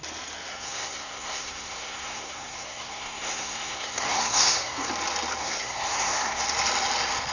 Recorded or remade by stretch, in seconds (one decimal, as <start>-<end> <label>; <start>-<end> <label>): 0.0-0.5 recorded; 0.5-4.9 remade; 4.9-5.4 recorded; 5.4-6.4 remade; 6.4-7.3 recorded